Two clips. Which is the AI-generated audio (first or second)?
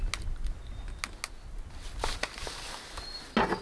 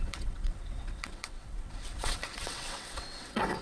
second